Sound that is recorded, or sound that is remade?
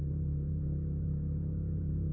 remade